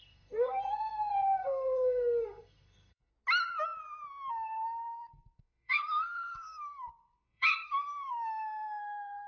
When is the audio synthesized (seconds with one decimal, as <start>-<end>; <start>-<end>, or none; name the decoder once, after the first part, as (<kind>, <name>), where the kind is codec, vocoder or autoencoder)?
0.0-3.1 (codec, SNAC); 4.3-9.3